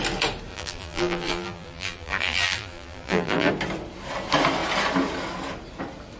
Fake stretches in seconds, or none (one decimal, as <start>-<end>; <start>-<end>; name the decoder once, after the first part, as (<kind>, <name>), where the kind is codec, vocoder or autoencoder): 0.5-3.5 (vocoder, BigVGAN v2)